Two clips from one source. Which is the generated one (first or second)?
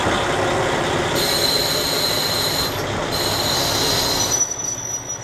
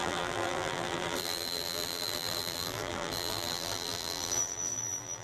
second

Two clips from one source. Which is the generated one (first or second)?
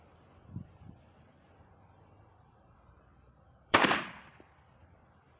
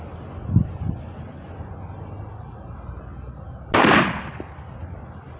first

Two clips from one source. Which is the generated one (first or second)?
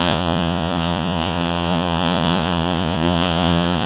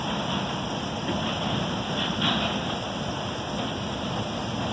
first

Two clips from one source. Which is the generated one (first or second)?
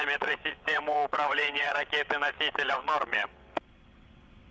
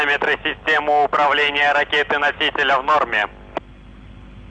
first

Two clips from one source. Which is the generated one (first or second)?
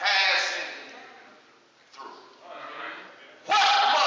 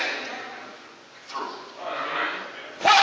second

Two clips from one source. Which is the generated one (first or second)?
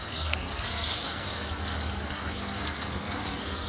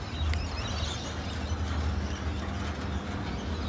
first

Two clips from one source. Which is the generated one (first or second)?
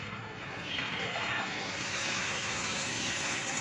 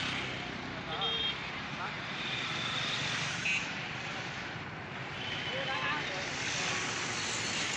first